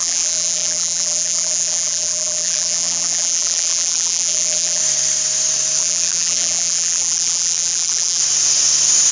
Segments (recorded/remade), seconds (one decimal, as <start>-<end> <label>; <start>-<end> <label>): 0.0-4.8 remade; 4.8-5.8 recorded; 5.8-8.2 remade; 8.2-9.1 recorded